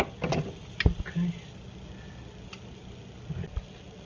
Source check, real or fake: real